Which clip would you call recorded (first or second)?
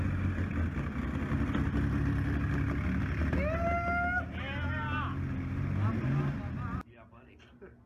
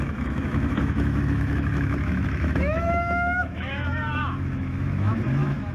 first